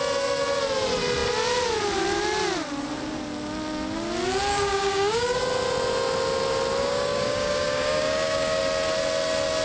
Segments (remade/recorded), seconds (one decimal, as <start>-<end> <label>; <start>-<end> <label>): 0.0-4.5 recorded; 4.5-5.4 remade; 5.4-6.8 recorded; 6.8-8.6 remade; 8.6-9.6 recorded